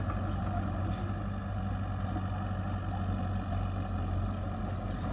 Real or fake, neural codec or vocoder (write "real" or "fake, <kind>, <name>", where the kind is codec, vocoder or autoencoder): real